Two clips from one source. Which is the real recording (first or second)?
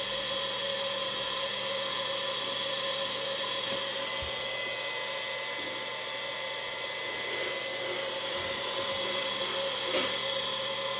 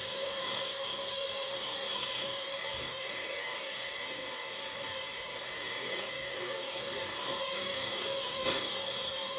first